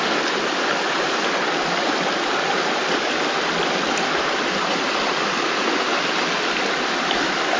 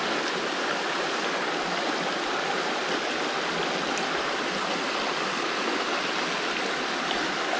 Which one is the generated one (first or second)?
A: first